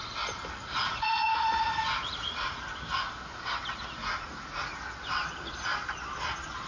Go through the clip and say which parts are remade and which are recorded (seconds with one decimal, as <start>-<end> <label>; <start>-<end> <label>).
0.0-0.7 recorded; 0.7-2.6 remade; 2.6-4.0 recorded; 4.0-4.8 remade; 4.8-6.7 recorded